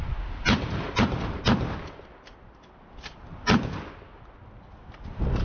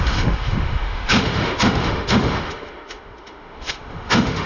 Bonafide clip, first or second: first